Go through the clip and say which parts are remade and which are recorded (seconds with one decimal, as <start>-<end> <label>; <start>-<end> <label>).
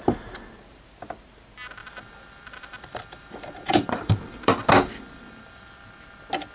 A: 0.0-1.8 recorded; 1.8-5.7 remade; 5.7-6.5 recorded